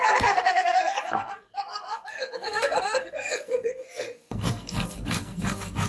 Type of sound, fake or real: fake